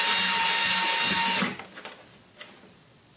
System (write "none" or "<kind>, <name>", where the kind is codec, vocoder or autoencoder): none